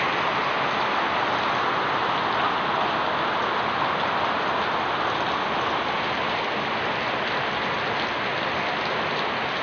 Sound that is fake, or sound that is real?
real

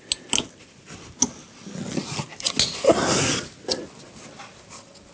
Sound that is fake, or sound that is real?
real